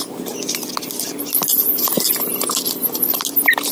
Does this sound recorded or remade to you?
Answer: recorded